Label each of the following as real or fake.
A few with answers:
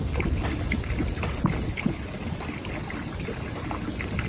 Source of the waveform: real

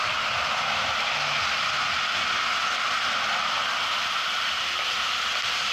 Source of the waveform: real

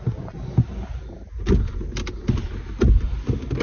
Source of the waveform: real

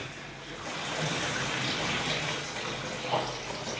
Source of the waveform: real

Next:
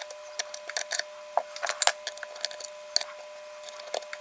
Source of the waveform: real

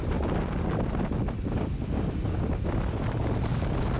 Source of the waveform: real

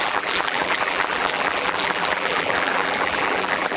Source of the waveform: fake